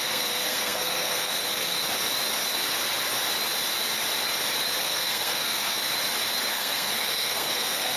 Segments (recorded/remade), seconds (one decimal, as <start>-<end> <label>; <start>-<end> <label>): 0.0-1.8 remade; 1.8-4.8 recorded; 4.8-5.8 remade; 5.8-6.5 recorded; 6.5-8.0 remade